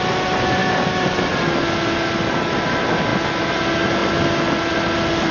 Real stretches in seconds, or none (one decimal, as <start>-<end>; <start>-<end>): 0.0-5.3